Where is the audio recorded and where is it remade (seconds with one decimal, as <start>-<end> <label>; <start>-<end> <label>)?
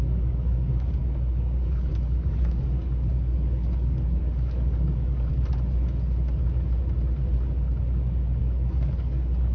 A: 0.0-5.3 remade; 5.3-8.4 recorded; 8.4-9.5 remade